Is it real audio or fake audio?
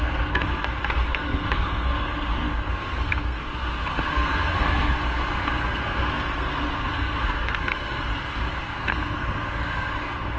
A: fake